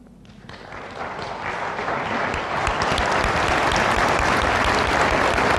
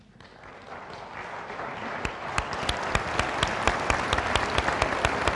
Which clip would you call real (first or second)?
second